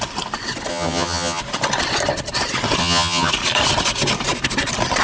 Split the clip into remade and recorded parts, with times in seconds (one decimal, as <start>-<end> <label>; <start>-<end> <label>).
0.0-0.7 recorded; 0.7-1.4 remade; 1.4-2.8 recorded; 2.8-3.3 remade; 3.3-5.0 recorded